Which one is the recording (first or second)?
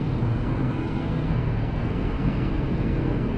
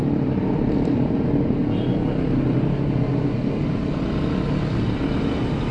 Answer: second